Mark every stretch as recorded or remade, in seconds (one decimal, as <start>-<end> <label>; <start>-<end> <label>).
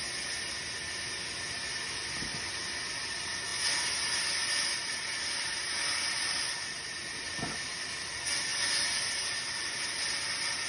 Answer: 0.0-10.7 recorded